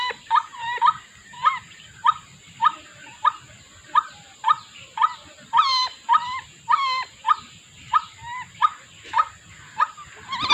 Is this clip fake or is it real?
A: real